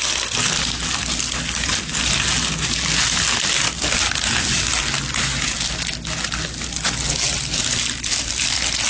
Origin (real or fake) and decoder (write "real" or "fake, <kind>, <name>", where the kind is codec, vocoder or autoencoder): real